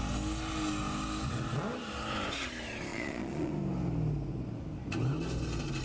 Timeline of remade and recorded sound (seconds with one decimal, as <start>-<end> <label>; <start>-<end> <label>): 0.0-2.9 recorded; 2.9-3.5 remade; 3.5-5.8 recorded